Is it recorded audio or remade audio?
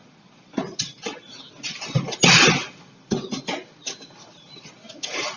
recorded